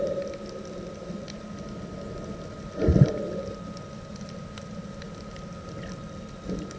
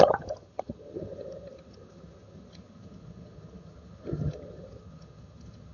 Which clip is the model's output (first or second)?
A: second